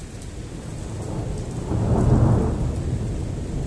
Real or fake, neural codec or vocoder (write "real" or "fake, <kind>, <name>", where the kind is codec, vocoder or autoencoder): real